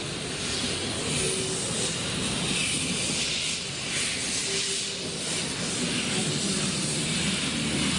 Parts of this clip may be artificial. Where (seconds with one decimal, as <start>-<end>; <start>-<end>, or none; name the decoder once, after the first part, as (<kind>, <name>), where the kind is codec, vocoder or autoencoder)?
none